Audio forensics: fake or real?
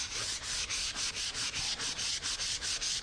real